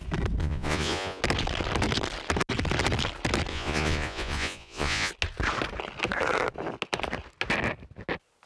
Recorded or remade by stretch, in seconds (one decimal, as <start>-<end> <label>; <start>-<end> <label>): 0.0-0.4 recorded; 0.4-1.2 remade; 1.2-3.5 recorded; 3.5-5.1 remade; 5.1-8.5 recorded